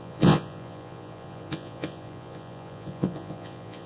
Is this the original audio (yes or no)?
no